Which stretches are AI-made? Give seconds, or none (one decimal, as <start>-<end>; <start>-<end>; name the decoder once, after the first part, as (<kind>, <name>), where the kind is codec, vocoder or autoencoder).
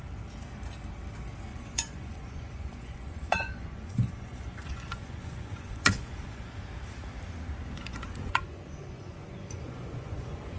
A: 1.5-6.5 (vocoder, Vocos); 7.6-10.6